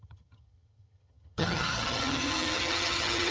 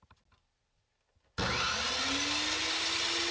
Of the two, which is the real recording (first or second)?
second